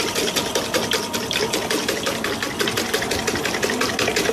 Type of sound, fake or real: real